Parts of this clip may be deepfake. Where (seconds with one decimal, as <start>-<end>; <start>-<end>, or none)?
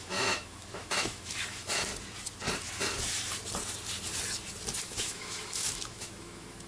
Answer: 0.0-1.9; 4.8-6.7